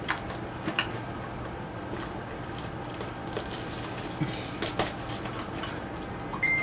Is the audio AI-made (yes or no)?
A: no